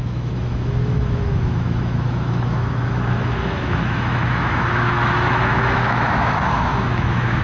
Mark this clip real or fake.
fake